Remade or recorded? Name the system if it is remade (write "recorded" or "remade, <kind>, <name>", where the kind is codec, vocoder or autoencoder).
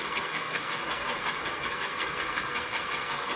remade, codec, SNAC